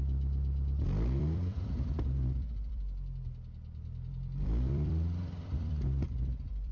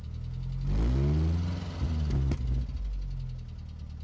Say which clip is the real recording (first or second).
second